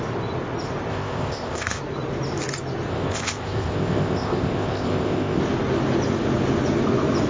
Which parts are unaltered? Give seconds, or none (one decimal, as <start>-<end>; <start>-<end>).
0.0-0.9; 1.8-2.9; 5.4-7.3